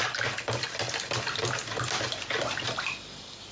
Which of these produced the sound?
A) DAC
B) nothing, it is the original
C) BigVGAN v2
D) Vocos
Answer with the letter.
B